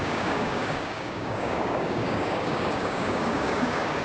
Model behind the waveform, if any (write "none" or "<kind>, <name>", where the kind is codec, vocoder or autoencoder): codec, DAC